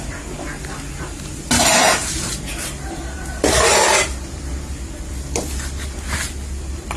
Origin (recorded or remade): recorded